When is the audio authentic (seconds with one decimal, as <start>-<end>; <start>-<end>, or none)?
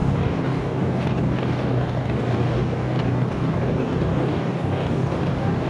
none